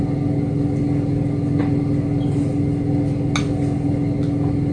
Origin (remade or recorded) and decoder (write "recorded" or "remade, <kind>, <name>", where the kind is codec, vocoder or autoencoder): recorded